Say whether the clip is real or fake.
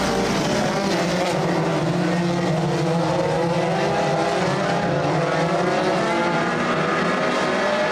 real